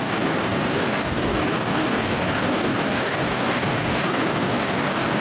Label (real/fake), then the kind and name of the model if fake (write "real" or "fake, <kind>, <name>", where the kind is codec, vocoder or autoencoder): fake, codec, DAC